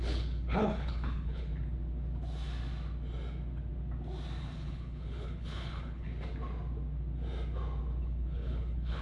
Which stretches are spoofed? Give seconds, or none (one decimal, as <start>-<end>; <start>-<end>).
0.0-1.5; 4.4-6.1; 8.0-9.0